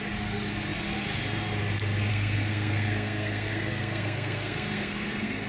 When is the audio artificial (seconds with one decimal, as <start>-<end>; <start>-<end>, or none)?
2.1-5.5